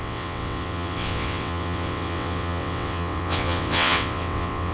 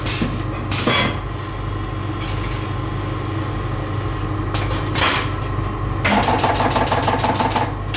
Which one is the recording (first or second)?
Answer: second